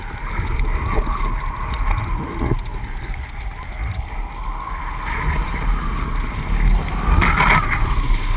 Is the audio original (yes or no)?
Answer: yes